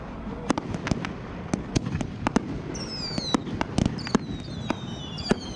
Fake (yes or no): no